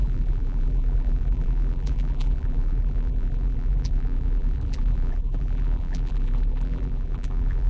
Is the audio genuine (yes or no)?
no